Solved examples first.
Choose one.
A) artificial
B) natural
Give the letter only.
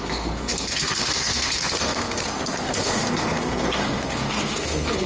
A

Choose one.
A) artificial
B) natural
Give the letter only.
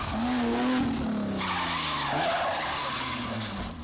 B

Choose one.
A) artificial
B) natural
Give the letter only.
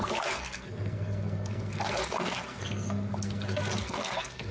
A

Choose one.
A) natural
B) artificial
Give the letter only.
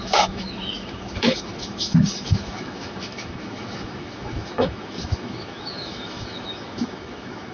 B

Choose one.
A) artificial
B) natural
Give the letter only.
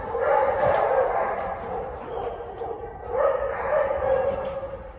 B